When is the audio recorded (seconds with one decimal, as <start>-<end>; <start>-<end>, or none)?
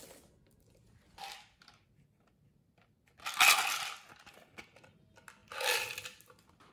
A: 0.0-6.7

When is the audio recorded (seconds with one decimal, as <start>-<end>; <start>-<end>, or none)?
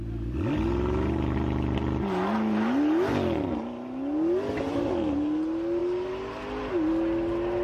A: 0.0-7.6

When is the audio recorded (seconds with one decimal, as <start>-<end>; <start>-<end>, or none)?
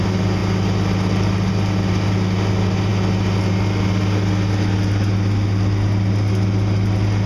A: 0.0-7.3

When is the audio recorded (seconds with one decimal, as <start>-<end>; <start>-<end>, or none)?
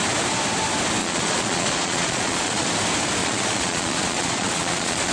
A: 0.0-1.0; 2.7-3.2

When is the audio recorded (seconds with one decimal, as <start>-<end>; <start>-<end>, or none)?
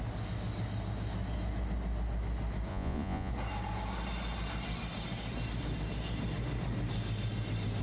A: 0.0-2.7; 3.3-7.8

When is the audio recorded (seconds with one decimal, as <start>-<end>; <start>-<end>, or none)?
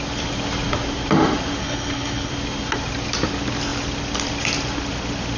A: 0.0-1.6; 2.3-5.4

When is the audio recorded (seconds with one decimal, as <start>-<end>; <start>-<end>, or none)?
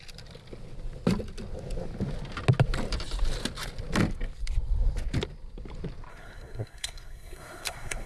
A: 0.0-6.1